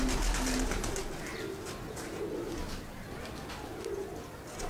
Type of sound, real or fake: real